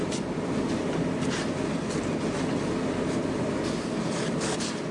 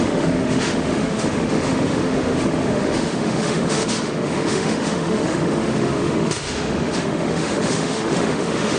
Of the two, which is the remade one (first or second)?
second